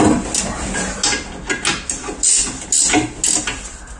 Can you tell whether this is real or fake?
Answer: real